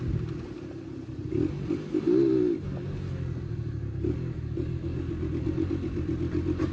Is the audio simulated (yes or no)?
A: no